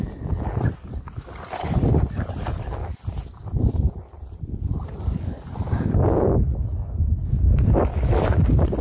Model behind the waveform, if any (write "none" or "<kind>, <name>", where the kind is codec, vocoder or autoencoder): none